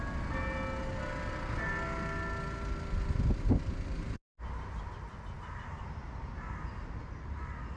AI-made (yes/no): no